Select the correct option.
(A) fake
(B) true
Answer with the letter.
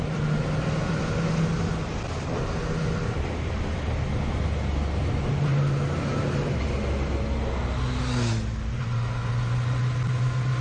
B